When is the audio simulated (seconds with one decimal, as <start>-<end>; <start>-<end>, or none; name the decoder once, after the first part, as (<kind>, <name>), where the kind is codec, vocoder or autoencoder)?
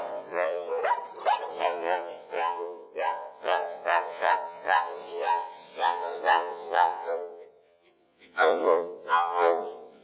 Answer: 0.0-0.8 (vocoder, Vocos); 1.5-10.0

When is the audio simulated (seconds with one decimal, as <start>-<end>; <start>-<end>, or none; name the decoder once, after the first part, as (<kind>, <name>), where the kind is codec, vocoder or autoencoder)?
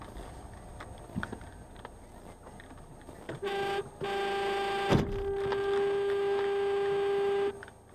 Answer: none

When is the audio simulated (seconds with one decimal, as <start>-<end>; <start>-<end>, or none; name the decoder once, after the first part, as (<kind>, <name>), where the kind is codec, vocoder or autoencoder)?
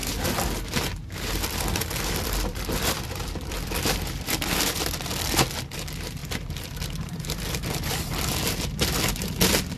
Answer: 0.0-4.9 (vocoder, BigVGAN v2); 6.2-7.4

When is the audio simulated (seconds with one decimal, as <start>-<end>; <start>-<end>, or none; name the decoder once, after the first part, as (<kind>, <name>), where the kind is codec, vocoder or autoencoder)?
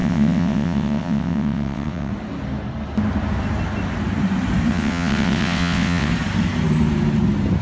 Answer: 0.0-2.1 (vocoder, WaveNeXt); 4.7-6.1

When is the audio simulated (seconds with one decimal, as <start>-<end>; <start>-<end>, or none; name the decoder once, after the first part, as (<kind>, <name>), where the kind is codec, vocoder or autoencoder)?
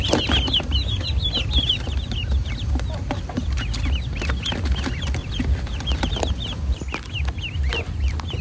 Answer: 5.2-6.3 (vocoder, BigVGAN v2)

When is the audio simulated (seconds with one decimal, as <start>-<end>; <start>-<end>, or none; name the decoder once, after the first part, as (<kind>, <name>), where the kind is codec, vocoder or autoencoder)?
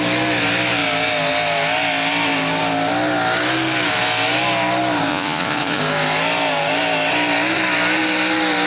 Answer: 5.1-5.8 (vocoder, Vocos)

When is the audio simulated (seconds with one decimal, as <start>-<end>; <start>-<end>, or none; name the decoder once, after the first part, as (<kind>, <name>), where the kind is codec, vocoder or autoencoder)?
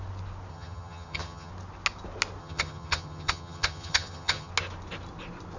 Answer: 0.5-1.5 (vocoder, HiFi-GAN); 2.4-4.5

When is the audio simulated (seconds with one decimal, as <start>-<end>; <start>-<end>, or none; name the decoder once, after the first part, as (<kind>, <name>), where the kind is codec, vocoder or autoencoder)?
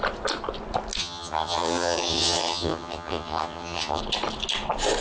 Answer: 1.0-4.0 (vocoder, HiFi-GAN)